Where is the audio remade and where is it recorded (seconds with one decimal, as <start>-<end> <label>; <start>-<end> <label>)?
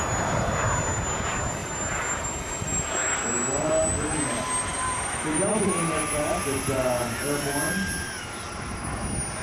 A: 0.0-9.4 recorded